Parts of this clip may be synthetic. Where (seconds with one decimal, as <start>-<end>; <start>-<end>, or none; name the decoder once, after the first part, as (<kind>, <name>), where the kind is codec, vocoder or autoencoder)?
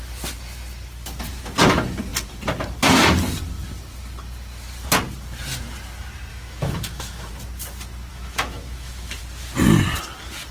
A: 6.3-7.3 (autoencoder, DAC-VAE); 8.1-9.2